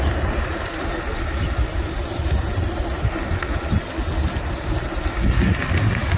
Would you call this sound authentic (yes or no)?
yes